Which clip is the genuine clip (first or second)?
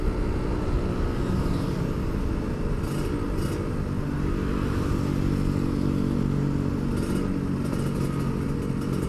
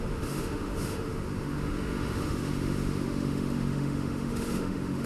first